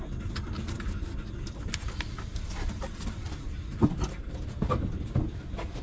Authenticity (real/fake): real